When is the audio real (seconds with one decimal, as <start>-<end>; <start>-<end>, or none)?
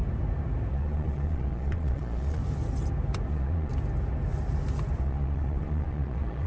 0.0-0.7; 2.4-3.3; 3.7-5.0